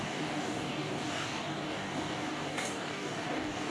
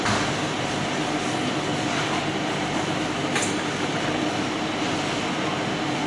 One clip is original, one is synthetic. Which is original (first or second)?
second